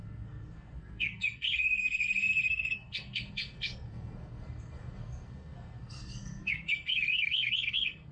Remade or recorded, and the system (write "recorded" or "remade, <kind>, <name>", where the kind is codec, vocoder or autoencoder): remade, codec, SNAC